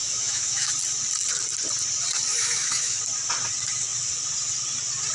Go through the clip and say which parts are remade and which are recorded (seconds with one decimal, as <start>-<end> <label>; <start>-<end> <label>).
0.0-0.7 remade; 0.7-2.3 recorded; 2.3-3.0 remade; 3.0-5.1 recorded